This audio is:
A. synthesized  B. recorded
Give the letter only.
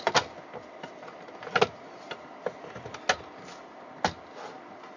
B